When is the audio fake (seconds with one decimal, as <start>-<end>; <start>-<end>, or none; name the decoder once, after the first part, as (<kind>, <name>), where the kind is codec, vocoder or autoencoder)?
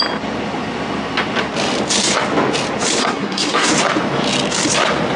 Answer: 3.0-3.7 (codec, SNAC)